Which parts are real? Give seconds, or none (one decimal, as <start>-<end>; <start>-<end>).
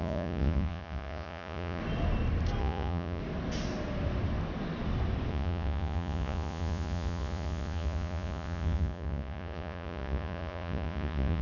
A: 1.8-2.6; 3.2-5.3